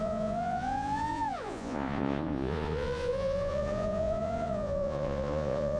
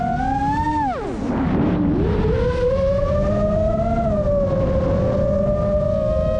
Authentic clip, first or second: second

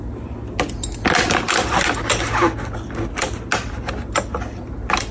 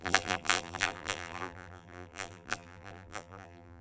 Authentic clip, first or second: first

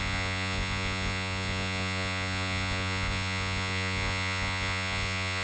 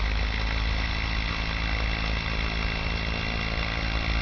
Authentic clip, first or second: second